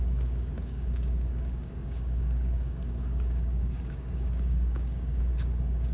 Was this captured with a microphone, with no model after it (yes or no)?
no